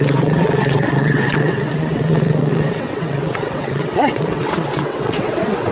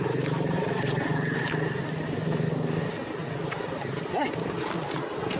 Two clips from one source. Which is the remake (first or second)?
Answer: first